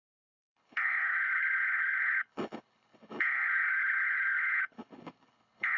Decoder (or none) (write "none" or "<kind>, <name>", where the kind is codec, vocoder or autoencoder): codec, HILCodec